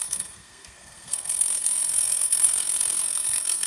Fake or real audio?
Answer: fake